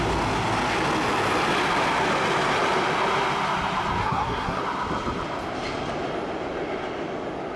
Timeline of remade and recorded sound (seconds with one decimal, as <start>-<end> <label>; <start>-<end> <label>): 0.0-4.0 recorded; 4.0-4.6 remade; 4.6-7.6 recorded